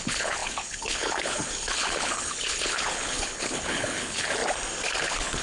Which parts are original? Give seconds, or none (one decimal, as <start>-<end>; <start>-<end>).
4.4-5.0